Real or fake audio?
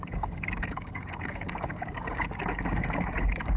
fake